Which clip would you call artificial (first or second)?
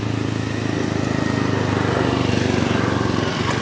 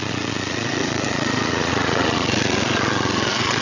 second